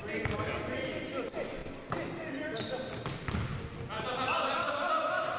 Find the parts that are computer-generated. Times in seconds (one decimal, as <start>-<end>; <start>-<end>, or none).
none